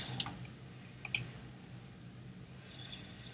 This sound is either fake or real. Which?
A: real